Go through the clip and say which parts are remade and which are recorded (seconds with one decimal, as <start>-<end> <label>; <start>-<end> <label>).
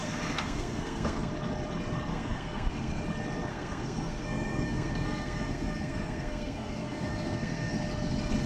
0.0-1.3 remade; 1.3-2.1 recorded; 2.1-3.0 remade; 3.0-3.5 recorded; 3.5-7.7 remade; 7.7-8.5 recorded